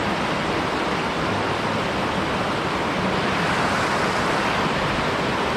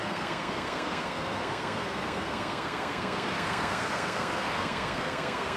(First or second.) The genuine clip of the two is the first